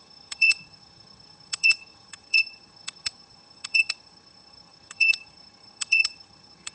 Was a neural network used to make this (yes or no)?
yes